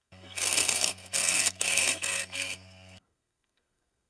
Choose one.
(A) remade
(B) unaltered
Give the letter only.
A